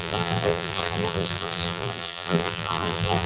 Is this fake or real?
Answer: fake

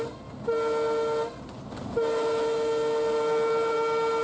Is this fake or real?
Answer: real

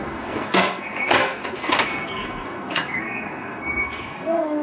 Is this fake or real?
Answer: fake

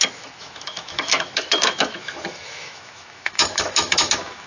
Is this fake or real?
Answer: fake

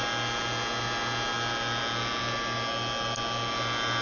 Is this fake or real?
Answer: real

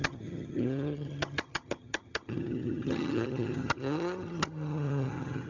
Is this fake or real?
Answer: fake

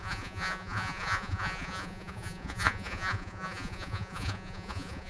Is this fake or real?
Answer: fake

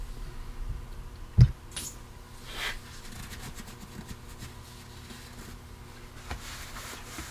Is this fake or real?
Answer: real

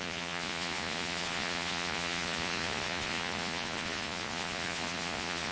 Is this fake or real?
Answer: fake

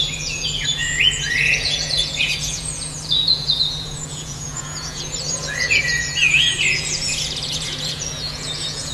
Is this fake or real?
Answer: fake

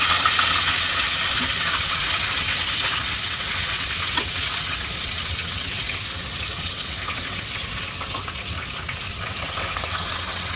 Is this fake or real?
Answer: fake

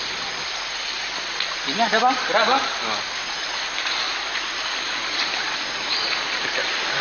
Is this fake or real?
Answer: real